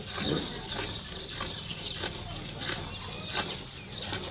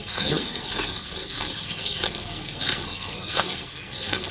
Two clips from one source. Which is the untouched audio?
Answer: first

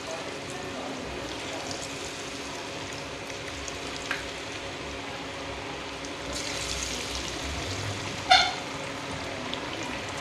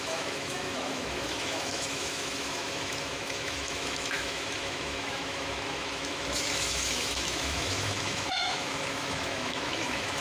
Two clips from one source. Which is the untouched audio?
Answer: first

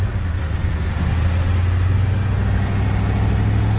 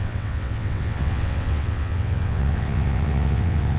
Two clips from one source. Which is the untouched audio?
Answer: first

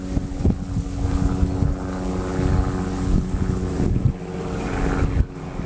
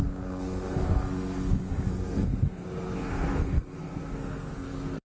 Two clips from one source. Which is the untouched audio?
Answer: first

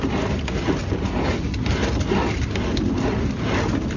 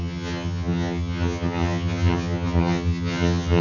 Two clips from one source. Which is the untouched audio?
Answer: first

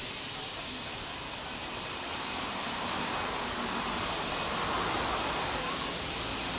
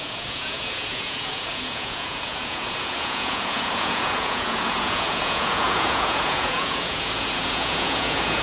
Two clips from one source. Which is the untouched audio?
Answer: first